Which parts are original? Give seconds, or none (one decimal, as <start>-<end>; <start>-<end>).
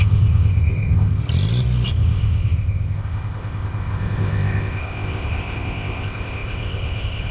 1.2-1.9